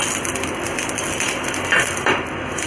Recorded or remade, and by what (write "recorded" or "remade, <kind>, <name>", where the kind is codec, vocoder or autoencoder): recorded